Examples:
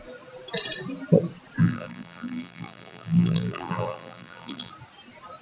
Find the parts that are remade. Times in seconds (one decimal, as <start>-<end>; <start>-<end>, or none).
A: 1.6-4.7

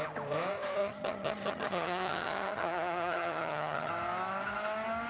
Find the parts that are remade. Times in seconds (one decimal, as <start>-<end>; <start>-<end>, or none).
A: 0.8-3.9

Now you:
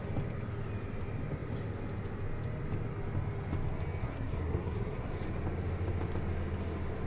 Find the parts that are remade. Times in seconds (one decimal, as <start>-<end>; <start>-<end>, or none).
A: 4.0-5.1